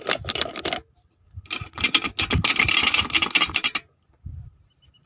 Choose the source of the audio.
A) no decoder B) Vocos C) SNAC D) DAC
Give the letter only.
A